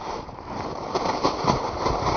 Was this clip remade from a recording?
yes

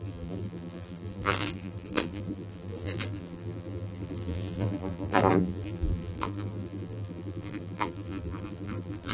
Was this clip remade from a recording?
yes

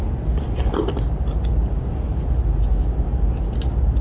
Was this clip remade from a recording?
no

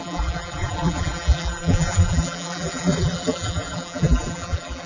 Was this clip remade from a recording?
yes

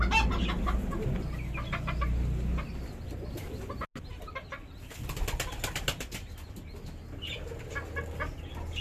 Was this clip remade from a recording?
no